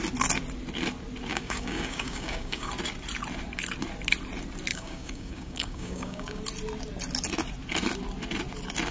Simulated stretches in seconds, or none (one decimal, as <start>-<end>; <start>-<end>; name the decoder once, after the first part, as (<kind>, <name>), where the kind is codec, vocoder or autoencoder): 1.3-2.7 (codec, DAC); 4.7-6.4